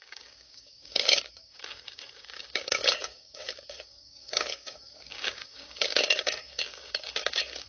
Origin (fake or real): fake